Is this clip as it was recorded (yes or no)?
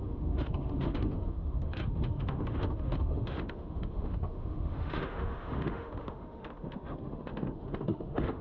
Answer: no